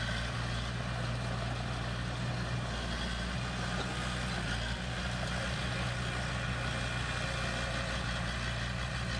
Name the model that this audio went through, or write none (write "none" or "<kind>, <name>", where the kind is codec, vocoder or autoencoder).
none